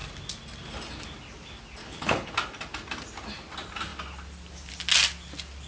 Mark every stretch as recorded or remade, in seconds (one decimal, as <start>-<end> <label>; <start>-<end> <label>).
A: 0.0-1.8 recorded; 1.8-2.3 remade; 2.3-5.7 recorded